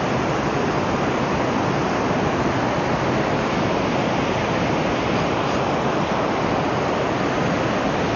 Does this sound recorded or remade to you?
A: recorded